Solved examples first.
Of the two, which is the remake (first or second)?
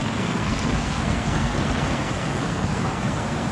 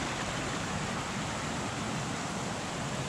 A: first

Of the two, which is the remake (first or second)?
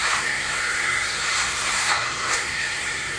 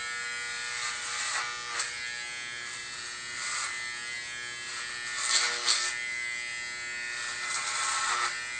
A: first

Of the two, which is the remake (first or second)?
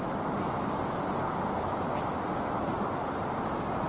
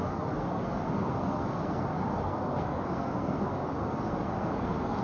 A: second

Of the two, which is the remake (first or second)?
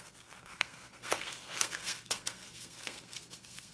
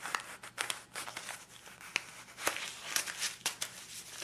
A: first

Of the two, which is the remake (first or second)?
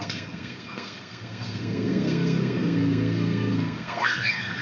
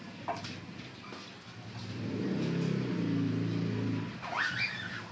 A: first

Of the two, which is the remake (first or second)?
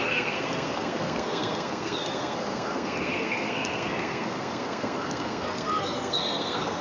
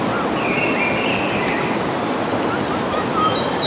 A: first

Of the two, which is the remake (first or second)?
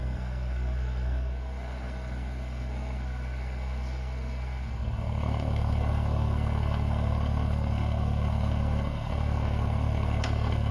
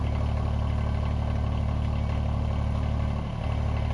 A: first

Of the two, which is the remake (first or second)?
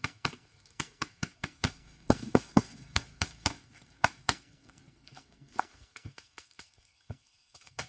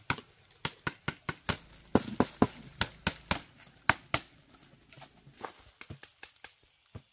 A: first